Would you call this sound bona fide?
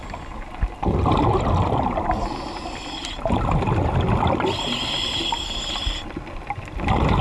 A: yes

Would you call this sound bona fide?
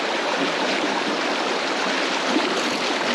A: no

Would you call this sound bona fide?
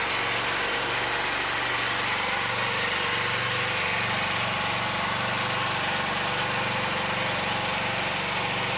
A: yes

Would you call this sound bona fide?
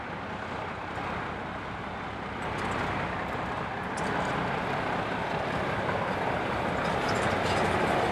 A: yes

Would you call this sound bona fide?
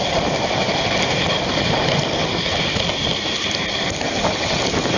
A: yes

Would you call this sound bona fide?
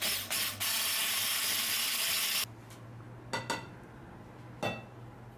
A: yes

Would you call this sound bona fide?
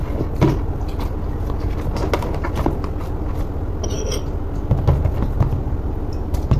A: yes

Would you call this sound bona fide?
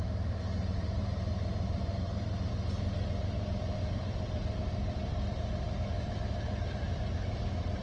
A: no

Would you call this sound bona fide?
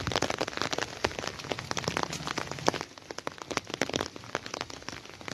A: yes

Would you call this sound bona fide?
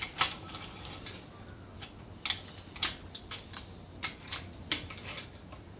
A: yes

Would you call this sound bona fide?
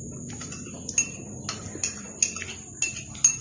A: yes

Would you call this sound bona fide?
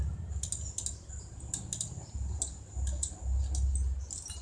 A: yes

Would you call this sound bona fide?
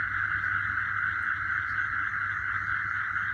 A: yes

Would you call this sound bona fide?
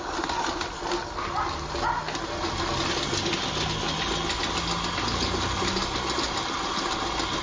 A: yes